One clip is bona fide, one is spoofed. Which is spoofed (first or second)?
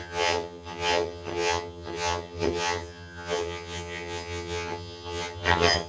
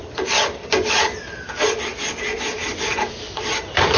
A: first